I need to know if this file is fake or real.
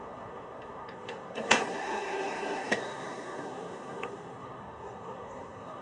fake